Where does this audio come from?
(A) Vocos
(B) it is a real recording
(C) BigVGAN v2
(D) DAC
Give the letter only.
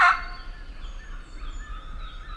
B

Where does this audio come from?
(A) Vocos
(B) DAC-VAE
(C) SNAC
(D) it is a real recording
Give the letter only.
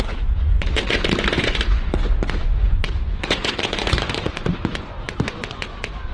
A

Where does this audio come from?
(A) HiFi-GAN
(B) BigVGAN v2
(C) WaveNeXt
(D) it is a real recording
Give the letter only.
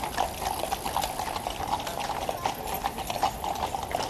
D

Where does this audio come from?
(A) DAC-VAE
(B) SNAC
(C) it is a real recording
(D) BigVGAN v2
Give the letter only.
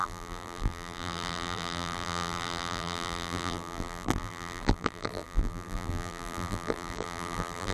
D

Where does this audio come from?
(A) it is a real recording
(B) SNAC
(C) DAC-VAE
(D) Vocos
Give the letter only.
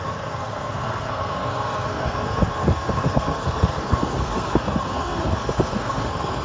B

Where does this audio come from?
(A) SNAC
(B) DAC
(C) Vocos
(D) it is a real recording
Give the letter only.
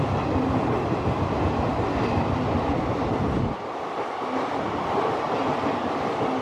D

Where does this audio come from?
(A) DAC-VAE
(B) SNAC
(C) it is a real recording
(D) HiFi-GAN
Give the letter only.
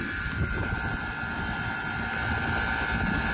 C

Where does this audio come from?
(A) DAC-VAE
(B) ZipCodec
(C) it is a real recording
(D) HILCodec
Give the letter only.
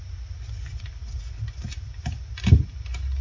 C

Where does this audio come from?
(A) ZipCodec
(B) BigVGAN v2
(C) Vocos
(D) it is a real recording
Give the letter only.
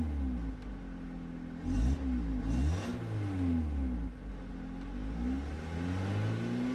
D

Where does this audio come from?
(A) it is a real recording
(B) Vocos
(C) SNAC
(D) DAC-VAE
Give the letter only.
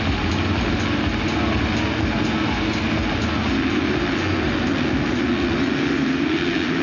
A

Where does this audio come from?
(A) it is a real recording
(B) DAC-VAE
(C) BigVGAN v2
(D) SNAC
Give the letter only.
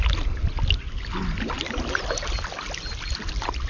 A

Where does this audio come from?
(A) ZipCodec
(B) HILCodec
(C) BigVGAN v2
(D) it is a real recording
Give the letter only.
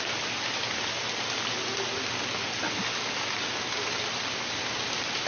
D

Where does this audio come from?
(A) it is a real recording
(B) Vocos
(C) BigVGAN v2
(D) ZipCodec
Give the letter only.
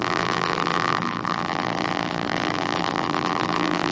C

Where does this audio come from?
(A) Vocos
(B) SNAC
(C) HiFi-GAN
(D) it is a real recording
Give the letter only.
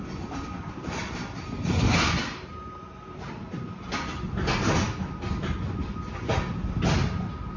D